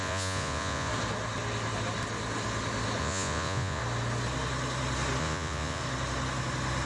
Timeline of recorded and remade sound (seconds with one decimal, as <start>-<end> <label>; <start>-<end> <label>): 0.0-0.9 remade; 0.9-3.0 recorded; 3.0-3.8 remade; 3.8-5.2 recorded; 5.2-5.8 remade; 5.8-6.9 recorded